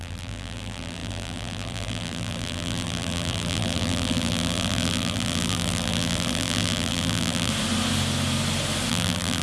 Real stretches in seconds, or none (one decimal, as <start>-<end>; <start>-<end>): 7.5-8.9